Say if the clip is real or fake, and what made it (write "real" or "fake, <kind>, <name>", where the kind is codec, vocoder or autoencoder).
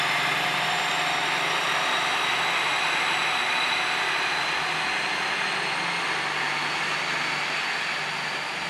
real